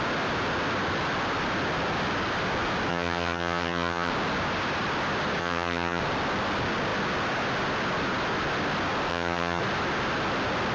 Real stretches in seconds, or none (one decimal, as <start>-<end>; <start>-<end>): 0.0-2.9; 4.1-5.4; 6.0-9.1; 9.6-10.7

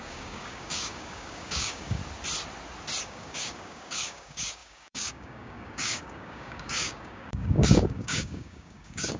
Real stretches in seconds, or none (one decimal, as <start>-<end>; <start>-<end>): 2.0-3.0

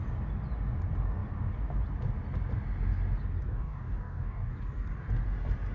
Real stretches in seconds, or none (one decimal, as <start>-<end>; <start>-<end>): 0.0-3.5; 4.5-5.7

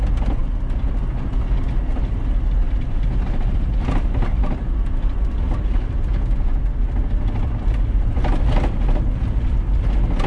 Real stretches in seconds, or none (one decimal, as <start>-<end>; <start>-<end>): 0.0-4.3; 5.5-10.3